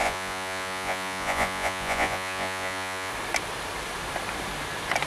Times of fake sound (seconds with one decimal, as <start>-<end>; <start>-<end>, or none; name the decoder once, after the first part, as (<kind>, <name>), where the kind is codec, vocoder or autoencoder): 0.0-3.1 (vocoder, Vocos)